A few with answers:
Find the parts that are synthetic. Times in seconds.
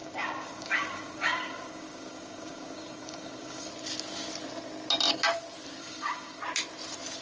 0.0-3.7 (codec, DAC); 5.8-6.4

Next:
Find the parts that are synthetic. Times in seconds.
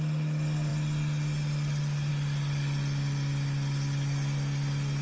none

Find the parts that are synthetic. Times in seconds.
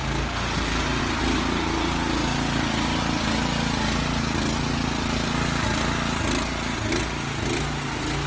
none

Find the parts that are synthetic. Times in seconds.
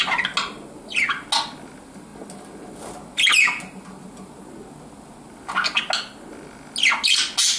none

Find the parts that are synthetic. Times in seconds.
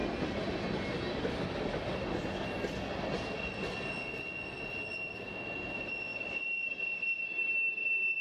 none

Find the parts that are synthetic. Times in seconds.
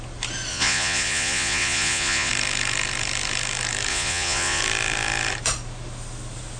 0.5-2.3 (vocoder, Vocos); 3.9-4.6